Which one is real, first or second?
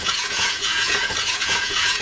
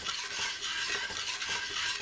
second